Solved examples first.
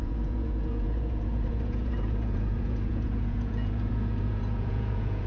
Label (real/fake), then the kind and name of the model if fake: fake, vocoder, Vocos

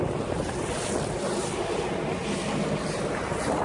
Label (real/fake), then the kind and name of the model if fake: real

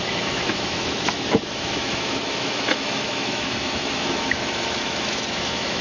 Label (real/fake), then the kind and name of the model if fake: fake, autoencoder, DAC-VAE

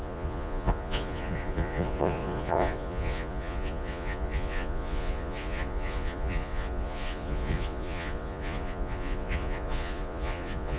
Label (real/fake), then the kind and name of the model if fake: fake, vocoder, Vocos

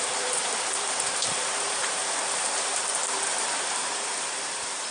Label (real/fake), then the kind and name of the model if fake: fake, vocoder, BigVGAN v2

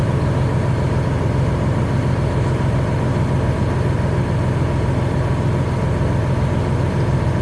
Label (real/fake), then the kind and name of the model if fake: real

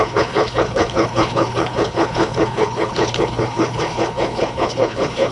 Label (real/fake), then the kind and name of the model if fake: fake, codec, HILCodec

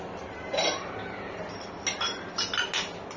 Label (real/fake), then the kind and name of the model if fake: real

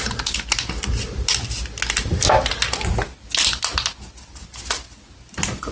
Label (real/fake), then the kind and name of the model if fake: real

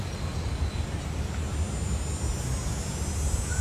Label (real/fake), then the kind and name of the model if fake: real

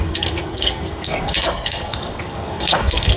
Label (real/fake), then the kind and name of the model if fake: fake, codec, SNAC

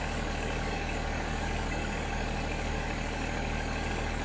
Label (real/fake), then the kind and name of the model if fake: fake, codec, DAC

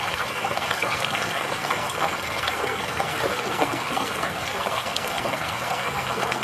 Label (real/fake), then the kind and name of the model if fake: fake, codec, SNAC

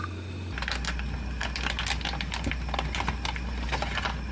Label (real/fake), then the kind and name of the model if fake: real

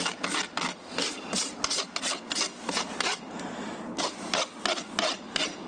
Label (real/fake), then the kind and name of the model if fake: real